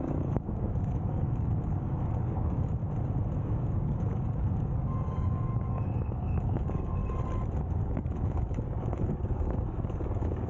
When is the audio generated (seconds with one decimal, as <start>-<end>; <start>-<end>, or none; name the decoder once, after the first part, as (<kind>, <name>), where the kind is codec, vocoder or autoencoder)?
0.0-2.8 (codec, DAC); 3.4-7.0; 7.6-10.5